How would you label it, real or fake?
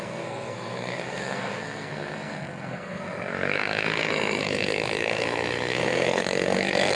fake